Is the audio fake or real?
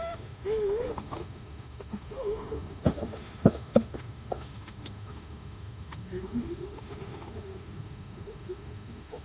fake